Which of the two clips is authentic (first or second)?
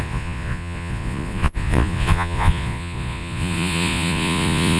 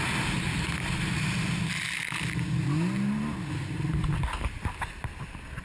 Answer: second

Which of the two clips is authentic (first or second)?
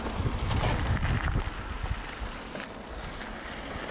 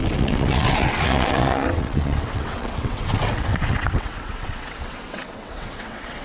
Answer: first